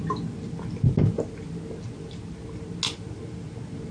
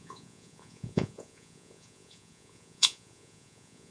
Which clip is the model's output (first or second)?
second